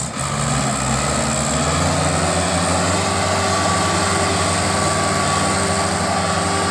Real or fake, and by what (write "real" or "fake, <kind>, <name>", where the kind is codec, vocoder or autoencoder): real